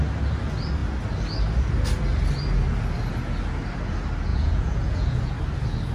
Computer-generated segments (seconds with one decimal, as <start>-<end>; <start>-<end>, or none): 4.3-5.3